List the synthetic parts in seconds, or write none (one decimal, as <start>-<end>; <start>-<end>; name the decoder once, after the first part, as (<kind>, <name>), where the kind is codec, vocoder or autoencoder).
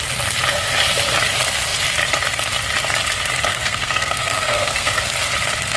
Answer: 3.5-5.0 (codec, SNAC)